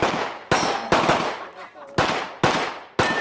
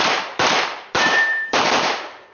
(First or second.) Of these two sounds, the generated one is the second